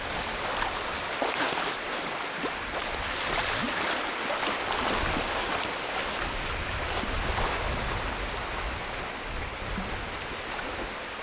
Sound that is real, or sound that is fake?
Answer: real